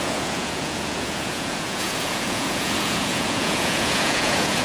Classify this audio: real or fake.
fake